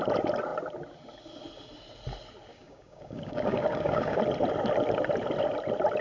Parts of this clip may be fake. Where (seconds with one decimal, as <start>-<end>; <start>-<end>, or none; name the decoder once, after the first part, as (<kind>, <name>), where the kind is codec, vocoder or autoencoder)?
2.5-4.2 (codec, DAC)